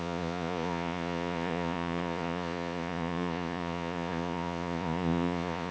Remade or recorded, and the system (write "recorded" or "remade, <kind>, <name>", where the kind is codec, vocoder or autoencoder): remade, vocoder, Vocos